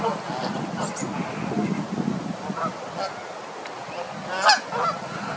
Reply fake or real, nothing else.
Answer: real